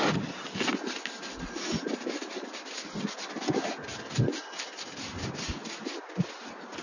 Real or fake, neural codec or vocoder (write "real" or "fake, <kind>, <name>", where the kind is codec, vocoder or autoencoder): real